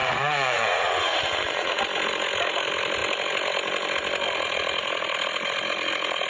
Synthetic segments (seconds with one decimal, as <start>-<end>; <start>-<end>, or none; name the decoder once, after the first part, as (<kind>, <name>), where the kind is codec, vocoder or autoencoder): 0.0-1.8 (vocoder, Vocos)